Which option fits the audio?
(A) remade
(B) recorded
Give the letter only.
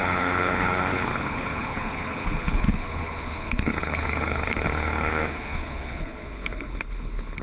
A